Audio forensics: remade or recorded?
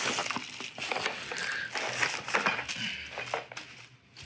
recorded